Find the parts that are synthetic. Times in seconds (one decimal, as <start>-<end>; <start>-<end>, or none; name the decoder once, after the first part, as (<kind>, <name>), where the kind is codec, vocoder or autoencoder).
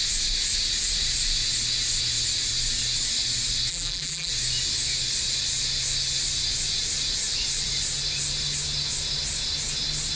3.7-4.3 (vocoder, BigVGAN v2)